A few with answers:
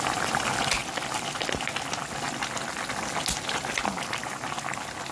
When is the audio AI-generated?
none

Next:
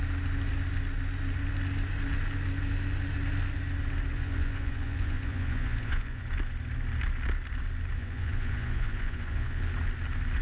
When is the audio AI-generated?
4.1-6.2 (vocoder, Vocos); 8.0-9.6

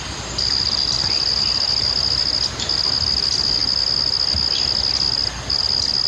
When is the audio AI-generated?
none

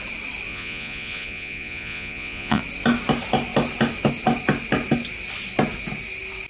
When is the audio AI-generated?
0.5-2.6 (vocoder, Vocos)